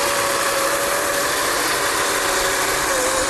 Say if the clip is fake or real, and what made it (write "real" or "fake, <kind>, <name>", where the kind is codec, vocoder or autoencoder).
real